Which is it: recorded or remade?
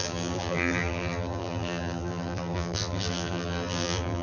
remade